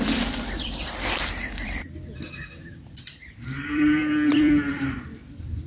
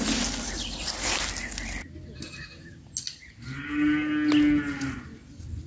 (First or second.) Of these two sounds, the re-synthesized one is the first